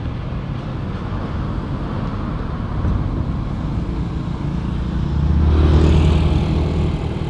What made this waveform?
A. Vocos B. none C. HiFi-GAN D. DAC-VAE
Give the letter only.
B